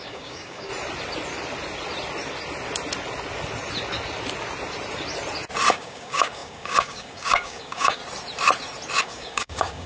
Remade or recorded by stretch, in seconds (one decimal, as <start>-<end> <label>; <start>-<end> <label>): 0.0-0.7 remade; 0.7-5.7 recorded; 5.7-8.0 remade; 8.0-9.0 recorded; 9.0-9.9 remade